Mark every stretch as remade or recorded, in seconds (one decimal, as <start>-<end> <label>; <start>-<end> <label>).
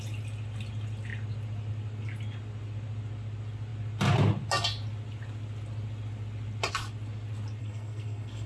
0.0-7.6 recorded; 7.6-8.5 remade